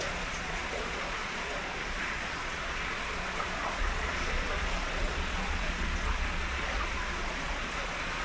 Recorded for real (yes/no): no